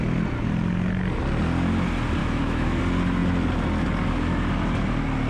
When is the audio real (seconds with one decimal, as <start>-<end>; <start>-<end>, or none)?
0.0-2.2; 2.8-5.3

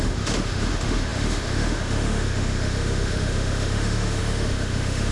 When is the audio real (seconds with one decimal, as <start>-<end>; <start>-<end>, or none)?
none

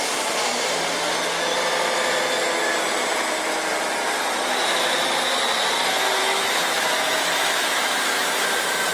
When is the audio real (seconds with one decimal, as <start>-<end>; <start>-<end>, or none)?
0.0-6.2; 8.4-8.9